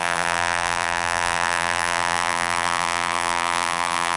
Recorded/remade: remade